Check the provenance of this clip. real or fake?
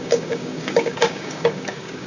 fake